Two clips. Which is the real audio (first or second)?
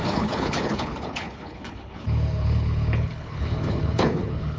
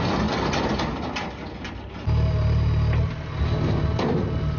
second